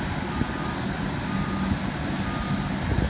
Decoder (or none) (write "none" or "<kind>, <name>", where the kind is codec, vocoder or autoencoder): none